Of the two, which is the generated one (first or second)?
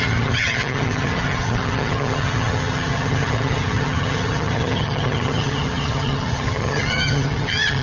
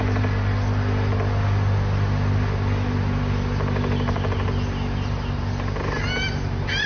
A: first